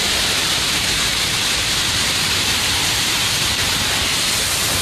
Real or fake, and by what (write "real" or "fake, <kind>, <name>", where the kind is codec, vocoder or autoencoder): fake, vocoder, BigVGAN v2